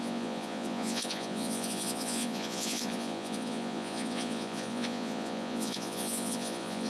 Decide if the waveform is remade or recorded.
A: remade